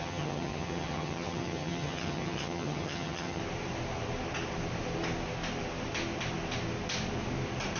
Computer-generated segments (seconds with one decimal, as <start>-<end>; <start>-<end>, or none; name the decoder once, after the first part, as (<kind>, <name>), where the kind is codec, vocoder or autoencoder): 0.0-3.4 (vocoder, HiFi-GAN)